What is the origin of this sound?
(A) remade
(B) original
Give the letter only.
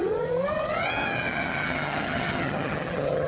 A